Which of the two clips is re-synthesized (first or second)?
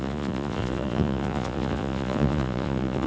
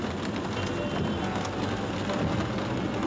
first